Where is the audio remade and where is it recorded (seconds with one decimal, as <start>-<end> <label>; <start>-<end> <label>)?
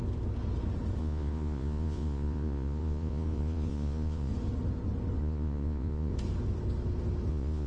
0.0-1.0 recorded; 1.0-4.3 remade; 4.3-5.2 recorded; 5.2-6.1 remade; 6.1-7.3 recorded; 7.3-7.7 remade